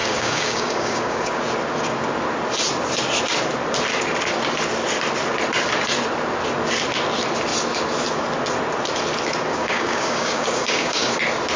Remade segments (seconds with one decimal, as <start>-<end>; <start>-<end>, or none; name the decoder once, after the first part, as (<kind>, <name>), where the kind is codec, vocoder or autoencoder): 0.0-1.4 (codec, DAC); 9.5-11.2